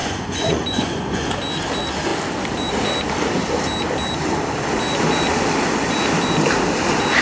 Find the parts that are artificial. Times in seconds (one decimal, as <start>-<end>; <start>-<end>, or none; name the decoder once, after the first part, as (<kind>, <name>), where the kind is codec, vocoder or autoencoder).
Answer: 0.0-1.3 (vocoder, Vocos)